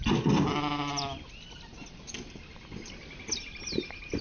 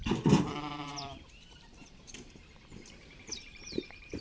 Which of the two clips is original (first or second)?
first